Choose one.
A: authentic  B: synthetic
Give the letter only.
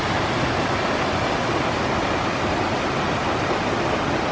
A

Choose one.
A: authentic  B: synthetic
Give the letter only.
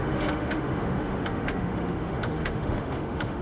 B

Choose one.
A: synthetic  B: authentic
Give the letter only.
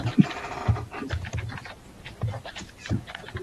B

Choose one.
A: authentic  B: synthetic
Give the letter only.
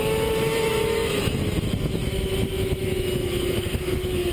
B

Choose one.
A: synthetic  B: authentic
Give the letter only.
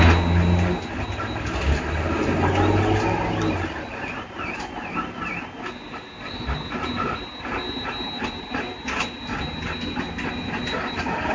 B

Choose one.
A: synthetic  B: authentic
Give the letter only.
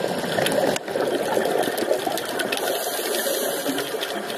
B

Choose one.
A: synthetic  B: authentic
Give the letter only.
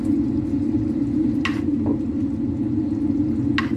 B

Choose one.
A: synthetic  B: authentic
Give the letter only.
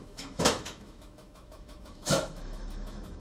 A